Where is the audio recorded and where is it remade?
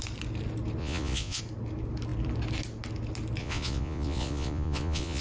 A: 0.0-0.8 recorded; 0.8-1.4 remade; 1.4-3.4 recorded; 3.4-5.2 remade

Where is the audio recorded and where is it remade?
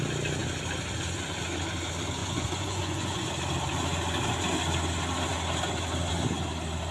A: 0.0-2.2 recorded; 2.2-3.3 remade; 3.3-6.9 recorded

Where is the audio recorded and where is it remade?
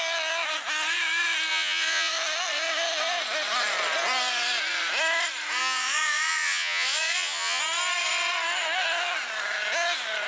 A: 0.0-1.5 recorded; 1.5-2.1 remade; 2.1-5.6 recorded; 5.6-7.6 remade; 7.6-10.3 recorded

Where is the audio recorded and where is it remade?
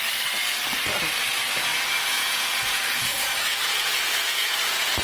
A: 0.0-1.7 recorded; 1.7-5.0 remade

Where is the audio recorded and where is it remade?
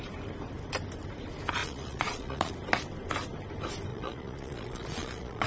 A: 0.0-1.6 recorded; 1.6-2.5 remade; 2.5-3.9 recorded; 3.9-5.5 remade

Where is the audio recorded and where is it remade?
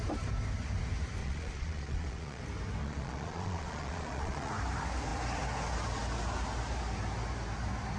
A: 0.0-1.2 recorded; 1.2-2.4 remade; 2.4-2.8 recorded; 2.8-4.5 remade; 4.5-8.0 recorded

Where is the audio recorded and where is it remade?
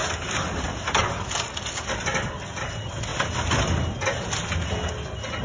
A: 0.0-5.4 recorded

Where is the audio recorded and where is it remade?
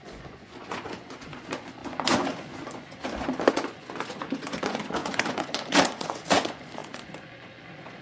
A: 0.0-8.0 remade